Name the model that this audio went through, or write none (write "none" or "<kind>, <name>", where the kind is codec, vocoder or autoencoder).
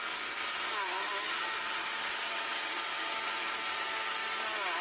none